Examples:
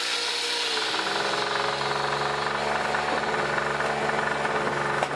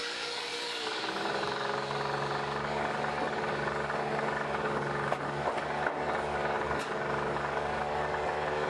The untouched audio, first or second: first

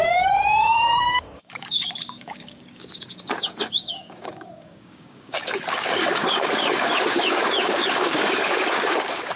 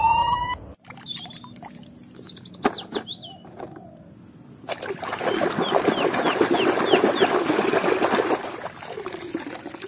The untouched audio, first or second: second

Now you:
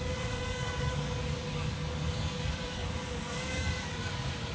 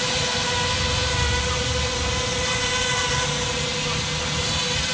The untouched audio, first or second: second